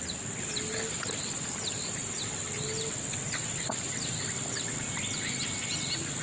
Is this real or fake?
real